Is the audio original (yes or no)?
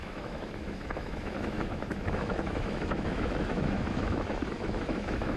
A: no